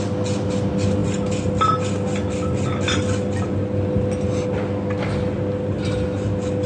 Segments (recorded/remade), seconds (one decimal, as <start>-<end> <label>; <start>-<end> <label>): 0.0-6.7 recorded